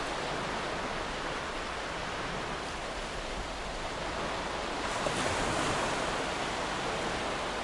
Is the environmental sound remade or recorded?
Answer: recorded